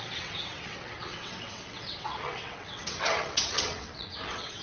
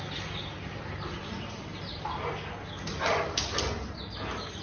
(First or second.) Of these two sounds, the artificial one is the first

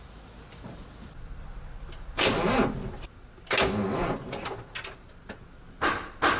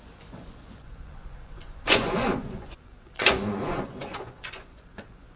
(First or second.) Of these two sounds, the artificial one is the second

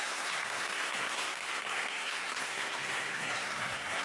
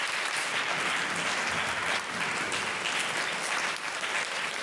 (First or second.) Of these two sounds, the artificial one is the first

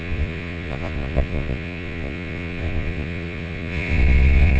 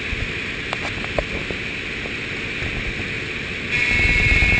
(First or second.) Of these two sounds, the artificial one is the first